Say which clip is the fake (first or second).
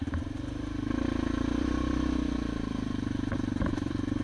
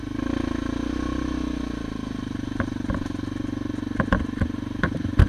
first